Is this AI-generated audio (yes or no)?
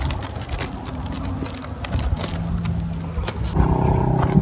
no